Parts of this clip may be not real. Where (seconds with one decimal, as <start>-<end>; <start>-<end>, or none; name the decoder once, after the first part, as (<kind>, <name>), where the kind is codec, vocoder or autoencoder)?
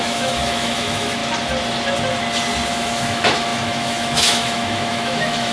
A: 0.0-1.2 (autoencoder, DAC-VAE); 2.7-5.5